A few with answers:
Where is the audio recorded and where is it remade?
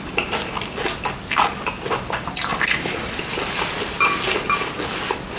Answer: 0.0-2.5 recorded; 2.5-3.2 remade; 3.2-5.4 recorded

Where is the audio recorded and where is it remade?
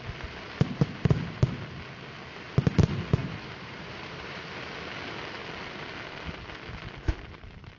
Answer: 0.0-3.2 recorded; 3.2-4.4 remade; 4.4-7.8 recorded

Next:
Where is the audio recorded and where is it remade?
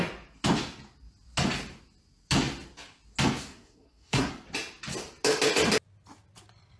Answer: 0.0-3.5 recorded; 3.5-4.3 remade; 4.3-6.8 recorded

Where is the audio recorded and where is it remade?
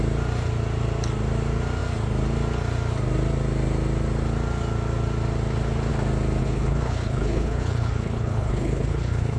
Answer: 0.0-6.4 recorded; 6.4-9.4 remade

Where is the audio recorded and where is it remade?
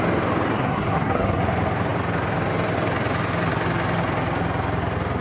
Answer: 0.0-0.5 recorded; 0.5-1.4 remade; 1.4-5.2 recorded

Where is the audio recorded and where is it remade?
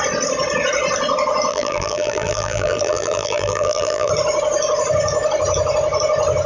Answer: 0.0-1.5 recorded; 1.5-4.1 remade; 4.1-6.5 recorded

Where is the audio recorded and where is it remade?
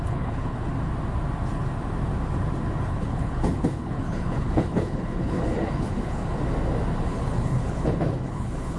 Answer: 0.0-0.7 remade; 0.7-2.8 recorded; 2.8-6.2 remade; 6.2-7.0 recorded; 7.0-8.8 remade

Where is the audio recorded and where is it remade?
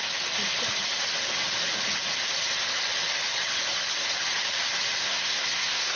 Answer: 0.0-5.0 recorded; 5.0-6.0 remade